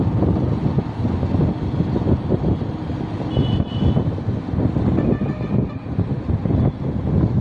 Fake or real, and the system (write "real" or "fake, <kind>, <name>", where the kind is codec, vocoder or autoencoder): real